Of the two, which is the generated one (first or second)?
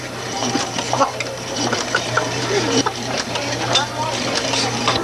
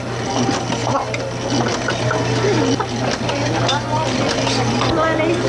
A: first